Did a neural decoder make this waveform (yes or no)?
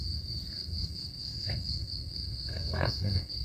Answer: yes